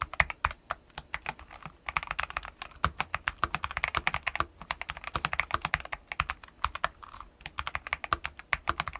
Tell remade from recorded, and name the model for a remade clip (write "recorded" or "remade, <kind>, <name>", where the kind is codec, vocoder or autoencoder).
recorded